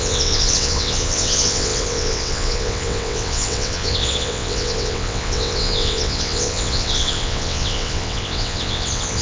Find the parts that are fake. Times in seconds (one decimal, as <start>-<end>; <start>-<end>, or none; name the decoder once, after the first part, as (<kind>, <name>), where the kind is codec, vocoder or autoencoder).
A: 0.0-9.2 (vocoder, WaveNeXt)

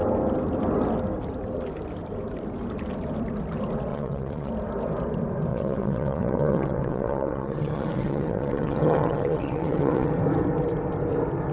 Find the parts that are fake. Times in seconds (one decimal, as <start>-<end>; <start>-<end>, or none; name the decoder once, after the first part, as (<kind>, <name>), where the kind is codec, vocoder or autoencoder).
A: 3.9-4.5 (vocoder, WaveNeXt); 5.5-10.1